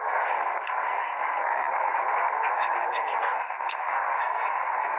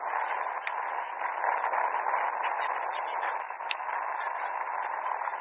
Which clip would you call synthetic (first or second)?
first